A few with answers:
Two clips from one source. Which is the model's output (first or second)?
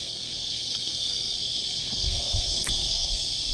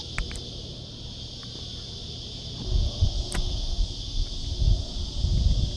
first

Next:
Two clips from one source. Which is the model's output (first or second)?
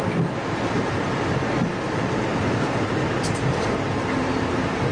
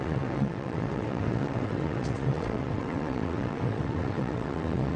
second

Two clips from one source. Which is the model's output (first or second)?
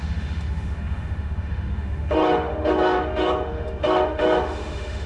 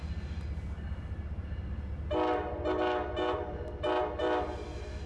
first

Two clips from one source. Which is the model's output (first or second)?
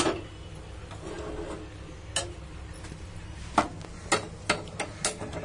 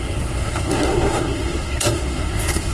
second